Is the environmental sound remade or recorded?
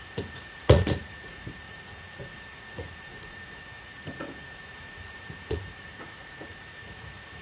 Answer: remade